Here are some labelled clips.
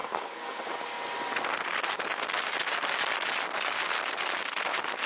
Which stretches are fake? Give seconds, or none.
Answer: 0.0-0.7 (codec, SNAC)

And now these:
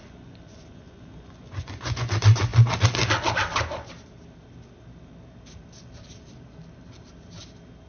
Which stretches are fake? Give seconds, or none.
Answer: 0.0-2.1 (vocoder, Vocos)

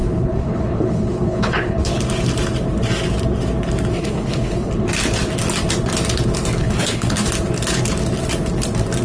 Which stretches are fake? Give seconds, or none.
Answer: 0.0-2.0 (codec, HILCodec); 3.9-4.7; 6.6-7.3

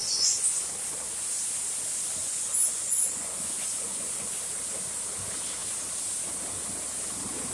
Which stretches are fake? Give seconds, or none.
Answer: 0.0-0.7 (vocoder, Vocos); 2.2-4.3

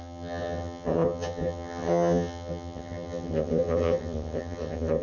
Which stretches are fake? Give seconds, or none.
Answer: 0.0-5.0 (vocoder, HiFi-GAN)